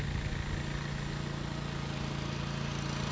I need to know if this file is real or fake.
real